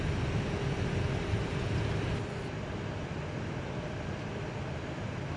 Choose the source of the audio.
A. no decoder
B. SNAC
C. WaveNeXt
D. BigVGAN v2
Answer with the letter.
A